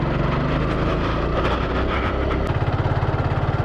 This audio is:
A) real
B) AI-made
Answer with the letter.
A